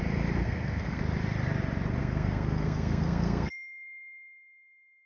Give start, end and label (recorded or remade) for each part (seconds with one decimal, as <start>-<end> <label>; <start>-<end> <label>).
0.0-0.4 recorded; 0.4-1.0 remade; 1.0-2.0 recorded; 2.0-5.1 remade